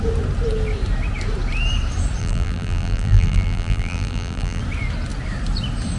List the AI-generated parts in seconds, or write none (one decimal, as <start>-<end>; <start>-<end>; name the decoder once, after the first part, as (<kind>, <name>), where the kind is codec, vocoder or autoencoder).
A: 2.2-4.6 (vocoder, BigVGAN v2)

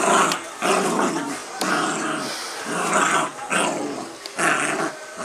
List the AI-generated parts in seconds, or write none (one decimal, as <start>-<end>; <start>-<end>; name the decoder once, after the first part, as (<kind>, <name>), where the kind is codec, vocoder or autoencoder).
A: none